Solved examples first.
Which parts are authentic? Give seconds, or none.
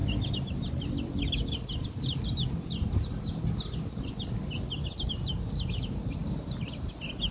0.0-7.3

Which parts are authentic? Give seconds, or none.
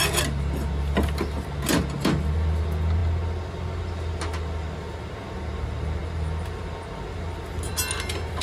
0.0-8.4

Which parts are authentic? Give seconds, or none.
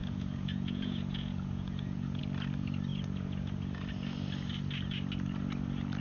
2.2-2.9; 3.5-6.0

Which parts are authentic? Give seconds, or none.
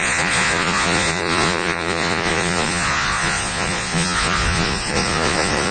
none